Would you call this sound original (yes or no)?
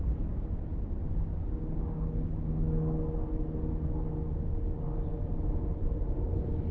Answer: yes